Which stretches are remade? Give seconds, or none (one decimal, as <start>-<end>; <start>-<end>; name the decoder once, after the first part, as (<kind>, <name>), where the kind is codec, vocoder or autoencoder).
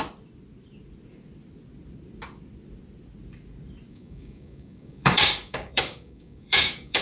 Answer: 3.9-7.0 (codec, DAC)